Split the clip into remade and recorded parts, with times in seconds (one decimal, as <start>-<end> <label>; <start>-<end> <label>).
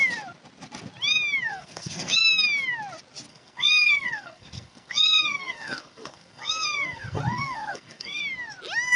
0.0-1.5 recorded; 1.5-2.2 remade; 2.2-3.3 recorded; 3.3-8.2 remade; 8.2-9.0 recorded